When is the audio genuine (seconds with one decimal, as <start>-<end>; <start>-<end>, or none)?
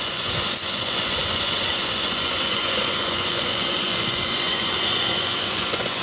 none